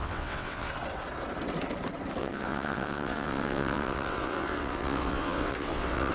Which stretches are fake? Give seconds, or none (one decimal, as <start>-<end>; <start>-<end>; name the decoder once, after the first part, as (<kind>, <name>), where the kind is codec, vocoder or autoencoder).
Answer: 0.0-0.7 (vocoder, WaveNeXt); 2.2-6.1